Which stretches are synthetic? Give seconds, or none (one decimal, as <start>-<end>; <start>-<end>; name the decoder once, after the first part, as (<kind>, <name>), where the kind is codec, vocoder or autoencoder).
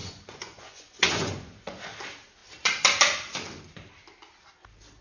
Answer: 0.0-1.8 (vocoder, Vocos)